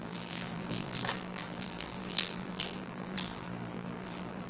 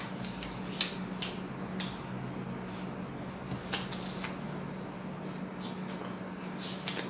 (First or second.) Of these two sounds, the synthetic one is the first